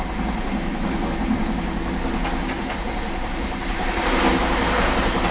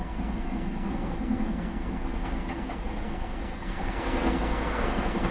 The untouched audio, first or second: first